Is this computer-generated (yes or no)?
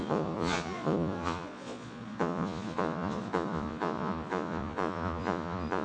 yes